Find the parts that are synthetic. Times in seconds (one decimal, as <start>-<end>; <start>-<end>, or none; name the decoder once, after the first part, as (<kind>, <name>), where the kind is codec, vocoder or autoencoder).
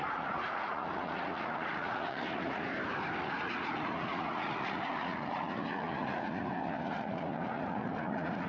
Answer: 0.0-2.7 (vocoder, Vocos); 3.2-8.5